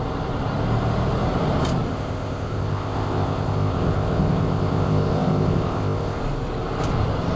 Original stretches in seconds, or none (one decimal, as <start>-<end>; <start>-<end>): 0.0-1.9; 6.2-7.4